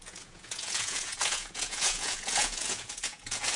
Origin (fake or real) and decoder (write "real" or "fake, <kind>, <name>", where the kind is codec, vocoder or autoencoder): fake, vocoder, Vocos